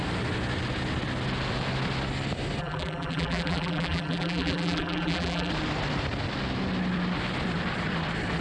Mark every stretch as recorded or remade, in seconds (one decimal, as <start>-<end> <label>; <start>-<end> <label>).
0.0-2.6 recorded; 2.6-5.5 remade; 5.5-8.4 recorded